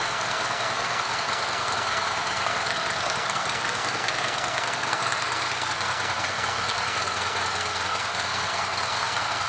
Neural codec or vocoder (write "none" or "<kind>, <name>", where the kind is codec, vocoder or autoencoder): codec, SNAC